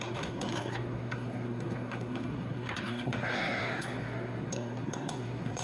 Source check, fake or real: fake